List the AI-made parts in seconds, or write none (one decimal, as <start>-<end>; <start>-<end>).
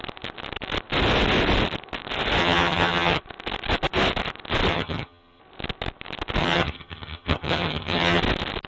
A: 2.4-3.2; 4.7-5.4; 6.4-8.2